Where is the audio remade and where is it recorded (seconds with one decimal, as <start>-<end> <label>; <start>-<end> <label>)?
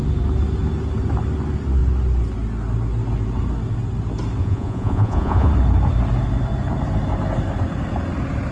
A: 0.0-4.4 recorded; 4.4-5.5 remade; 5.5-8.5 recorded